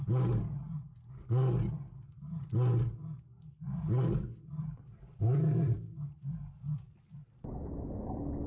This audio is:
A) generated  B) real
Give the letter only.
B